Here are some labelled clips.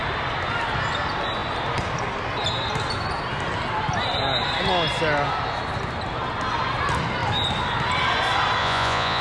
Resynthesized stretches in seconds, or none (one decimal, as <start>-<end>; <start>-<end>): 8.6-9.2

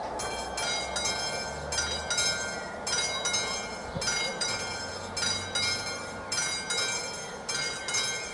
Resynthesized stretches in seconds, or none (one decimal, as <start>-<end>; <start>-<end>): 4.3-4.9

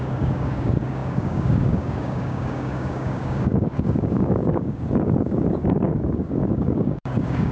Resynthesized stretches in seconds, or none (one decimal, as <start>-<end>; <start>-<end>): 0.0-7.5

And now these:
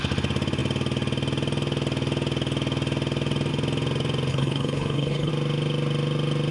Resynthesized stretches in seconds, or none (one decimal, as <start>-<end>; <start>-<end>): 4.3-5.3